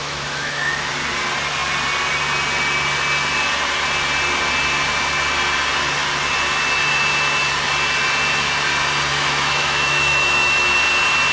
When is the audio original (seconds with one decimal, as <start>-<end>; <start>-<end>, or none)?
0.9-9.1; 10.8-11.3